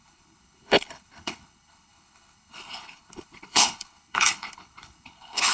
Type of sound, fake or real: fake